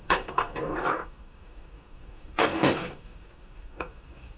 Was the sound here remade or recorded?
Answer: remade